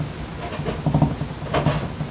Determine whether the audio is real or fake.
real